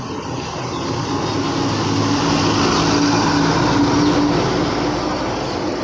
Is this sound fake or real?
real